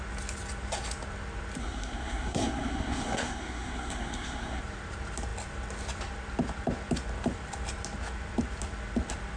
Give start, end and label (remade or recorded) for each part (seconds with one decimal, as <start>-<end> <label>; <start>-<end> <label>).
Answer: 0.0-1.6 recorded; 1.6-4.6 remade; 4.6-9.4 recorded